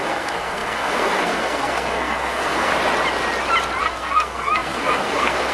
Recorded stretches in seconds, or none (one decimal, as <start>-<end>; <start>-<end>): 2.7-3.8